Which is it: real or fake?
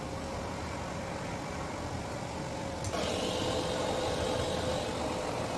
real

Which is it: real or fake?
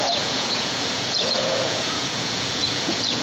fake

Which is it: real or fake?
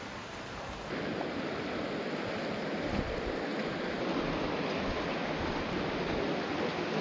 real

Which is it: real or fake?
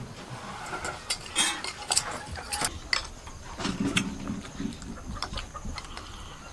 real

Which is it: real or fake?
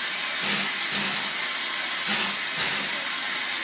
real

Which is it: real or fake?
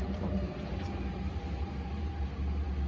real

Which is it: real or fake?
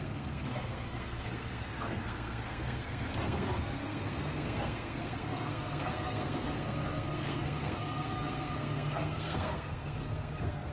fake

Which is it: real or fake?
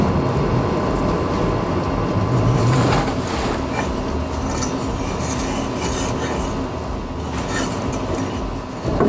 real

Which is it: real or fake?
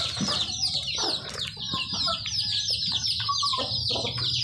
real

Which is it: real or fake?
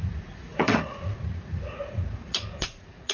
fake